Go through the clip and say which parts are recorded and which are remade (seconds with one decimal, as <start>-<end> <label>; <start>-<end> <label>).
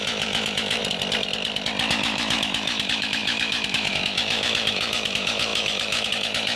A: 0.0-0.8 remade; 0.8-1.9 recorded; 1.9-6.6 remade